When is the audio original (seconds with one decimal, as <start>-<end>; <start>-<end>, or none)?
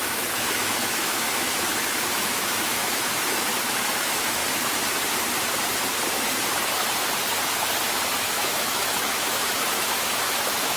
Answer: 4.4-8.2